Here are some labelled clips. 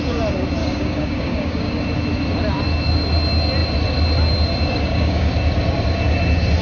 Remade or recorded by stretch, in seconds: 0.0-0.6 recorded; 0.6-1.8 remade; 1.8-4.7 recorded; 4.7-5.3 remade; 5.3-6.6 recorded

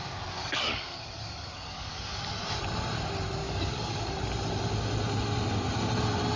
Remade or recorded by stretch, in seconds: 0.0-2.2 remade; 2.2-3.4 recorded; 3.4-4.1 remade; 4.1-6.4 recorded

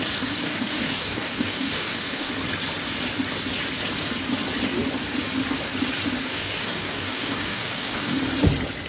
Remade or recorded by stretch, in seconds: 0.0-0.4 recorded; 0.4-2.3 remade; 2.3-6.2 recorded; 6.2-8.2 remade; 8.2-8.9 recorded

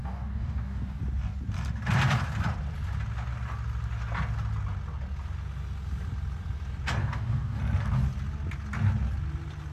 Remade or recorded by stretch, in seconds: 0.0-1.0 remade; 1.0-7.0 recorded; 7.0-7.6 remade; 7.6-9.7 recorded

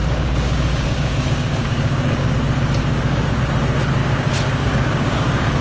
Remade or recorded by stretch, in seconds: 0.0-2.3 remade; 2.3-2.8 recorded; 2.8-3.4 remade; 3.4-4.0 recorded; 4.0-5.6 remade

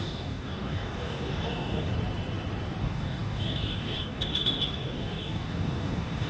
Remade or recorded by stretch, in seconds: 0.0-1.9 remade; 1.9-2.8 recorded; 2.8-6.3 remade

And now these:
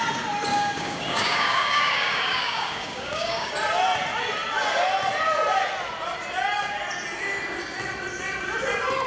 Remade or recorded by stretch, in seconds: 0.0-0.5 recorded; 0.5-3.5 remade; 3.5-9.1 recorded